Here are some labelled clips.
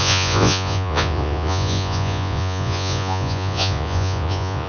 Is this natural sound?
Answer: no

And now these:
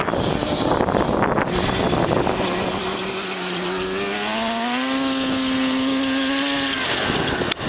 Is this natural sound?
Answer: yes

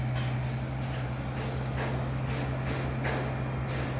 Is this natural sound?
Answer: yes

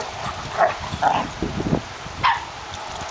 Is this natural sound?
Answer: yes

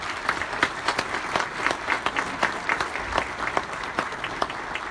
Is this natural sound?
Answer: yes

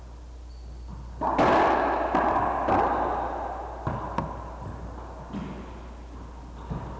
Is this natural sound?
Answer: yes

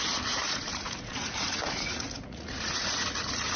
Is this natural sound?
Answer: no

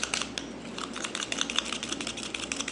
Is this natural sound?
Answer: yes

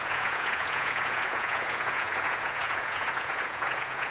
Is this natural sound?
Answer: no